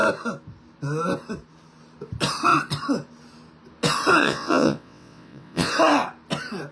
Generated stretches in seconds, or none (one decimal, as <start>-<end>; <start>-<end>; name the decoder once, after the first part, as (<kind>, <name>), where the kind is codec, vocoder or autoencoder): 4.2-5.7 (vocoder, WaveNeXt)